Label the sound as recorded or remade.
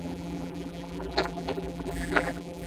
remade